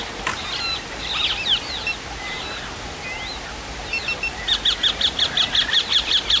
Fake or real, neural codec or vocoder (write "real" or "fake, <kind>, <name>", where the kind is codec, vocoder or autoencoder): real